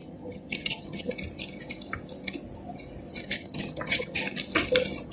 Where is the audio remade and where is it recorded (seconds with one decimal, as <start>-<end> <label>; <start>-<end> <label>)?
0.0-1.1 remade; 1.1-3.4 recorded; 3.4-4.2 remade; 4.2-5.1 recorded